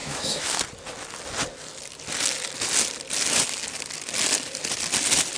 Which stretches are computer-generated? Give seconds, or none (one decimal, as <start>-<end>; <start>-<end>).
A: 0.0-0.6